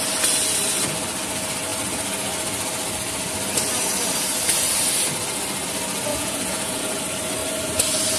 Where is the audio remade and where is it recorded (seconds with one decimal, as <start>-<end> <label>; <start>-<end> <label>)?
0.0-6.1 recorded; 6.1-6.8 remade; 6.8-8.2 recorded